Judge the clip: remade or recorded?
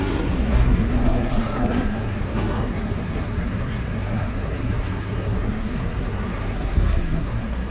remade